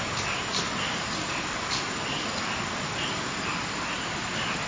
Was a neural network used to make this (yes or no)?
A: no